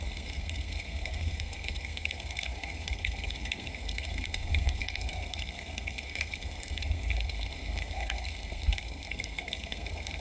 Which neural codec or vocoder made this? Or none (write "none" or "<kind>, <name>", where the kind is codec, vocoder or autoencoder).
codec, SNAC